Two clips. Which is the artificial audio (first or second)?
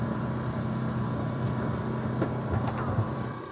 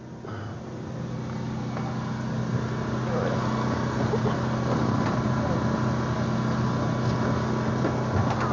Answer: first